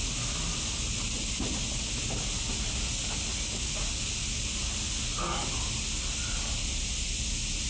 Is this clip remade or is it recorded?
recorded